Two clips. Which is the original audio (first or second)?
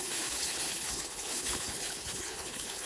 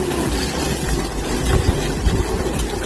second